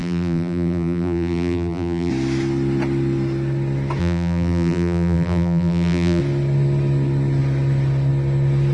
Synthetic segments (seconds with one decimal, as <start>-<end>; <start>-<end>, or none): 0.0-2.1; 4.0-6.2